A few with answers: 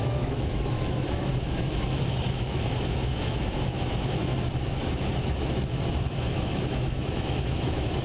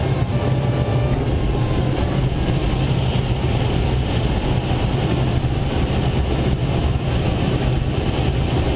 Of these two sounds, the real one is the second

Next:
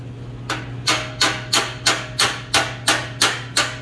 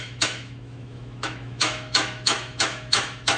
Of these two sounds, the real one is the first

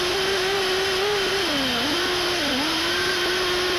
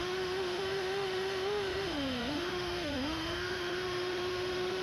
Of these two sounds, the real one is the first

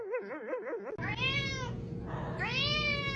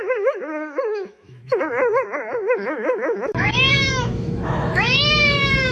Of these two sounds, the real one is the first